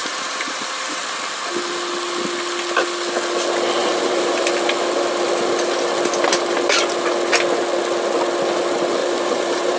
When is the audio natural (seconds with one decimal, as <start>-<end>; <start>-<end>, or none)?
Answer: 1.0-3.8; 4.4-9.0